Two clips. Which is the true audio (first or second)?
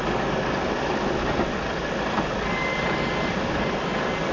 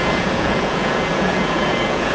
first